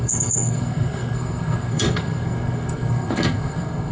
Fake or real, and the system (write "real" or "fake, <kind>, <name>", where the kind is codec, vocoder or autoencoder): fake, codec, SNAC